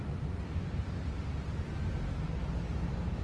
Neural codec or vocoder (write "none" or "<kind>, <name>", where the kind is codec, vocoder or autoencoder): none